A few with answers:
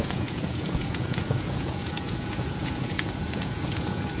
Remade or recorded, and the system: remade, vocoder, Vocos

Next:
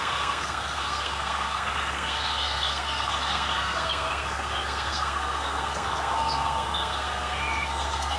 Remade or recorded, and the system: remade, codec, SNAC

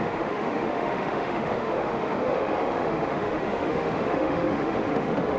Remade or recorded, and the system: remade, autoencoder, DAC-VAE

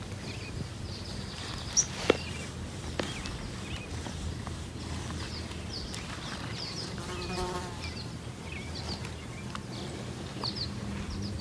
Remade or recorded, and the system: recorded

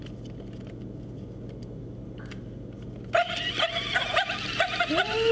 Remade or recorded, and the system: recorded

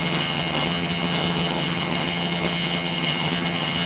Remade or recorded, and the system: remade, vocoder, HiFi-GAN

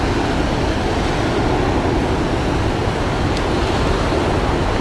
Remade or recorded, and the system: recorded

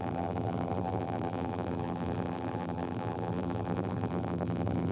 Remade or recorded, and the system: remade, vocoder, BigVGAN v2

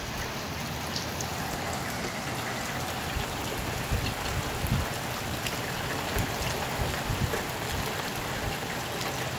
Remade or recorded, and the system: recorded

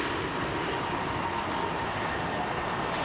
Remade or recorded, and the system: recorded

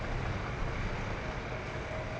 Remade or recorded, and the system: recorded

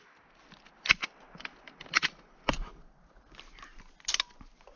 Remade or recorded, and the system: recorded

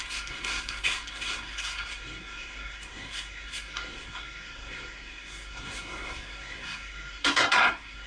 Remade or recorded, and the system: remade, codec, SNAC